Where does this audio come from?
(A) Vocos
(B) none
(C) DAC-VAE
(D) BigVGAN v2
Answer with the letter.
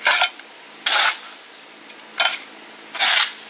B